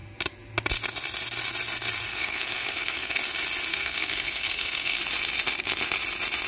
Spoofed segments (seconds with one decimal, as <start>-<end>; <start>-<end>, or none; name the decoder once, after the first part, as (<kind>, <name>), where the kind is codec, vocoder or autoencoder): 2.1-3.2 (codec, SNAC); 3.7-5.0